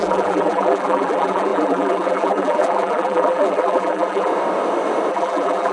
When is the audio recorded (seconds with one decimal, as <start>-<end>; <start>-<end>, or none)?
4.3-5.1